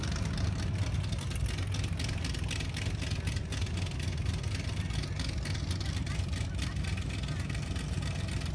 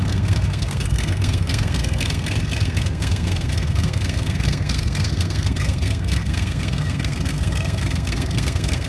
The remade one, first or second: second